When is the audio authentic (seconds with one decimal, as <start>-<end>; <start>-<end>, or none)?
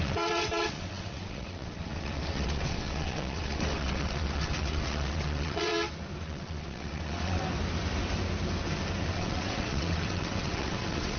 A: 5.7-6.2; 7.4-9.1